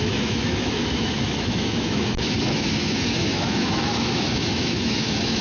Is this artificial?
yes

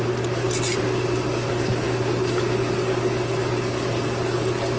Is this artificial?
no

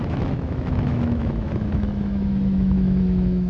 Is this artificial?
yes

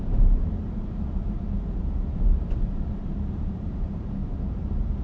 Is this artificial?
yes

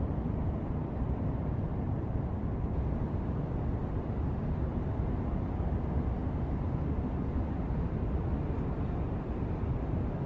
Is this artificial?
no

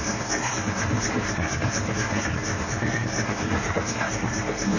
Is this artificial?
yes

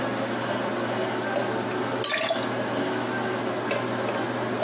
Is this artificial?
no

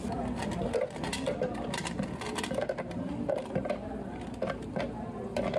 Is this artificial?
no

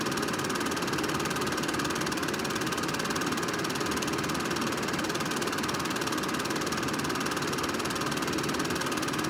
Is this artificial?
no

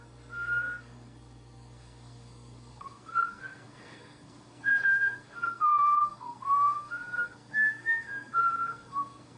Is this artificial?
yes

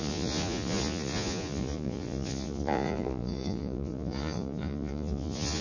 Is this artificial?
yes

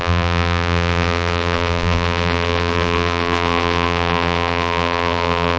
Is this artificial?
yes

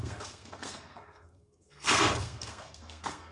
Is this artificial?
yes